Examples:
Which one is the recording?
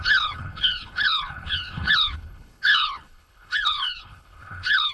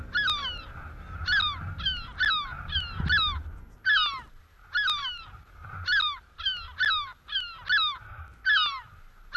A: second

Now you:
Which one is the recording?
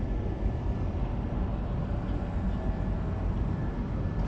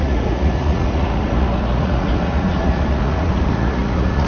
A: first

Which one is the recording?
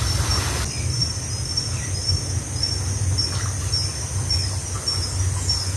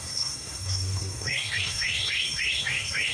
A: first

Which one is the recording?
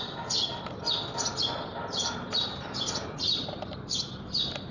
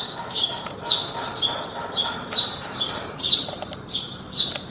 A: first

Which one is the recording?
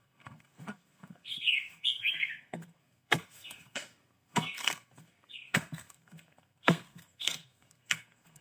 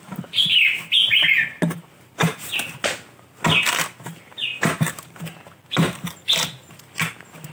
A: second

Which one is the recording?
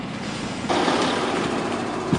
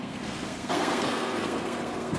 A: first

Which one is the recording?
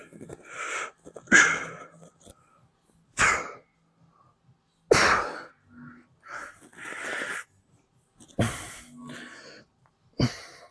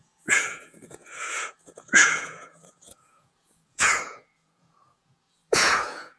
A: first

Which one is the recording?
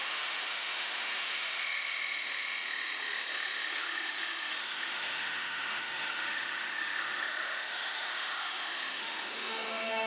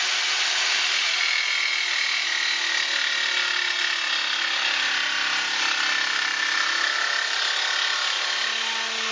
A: second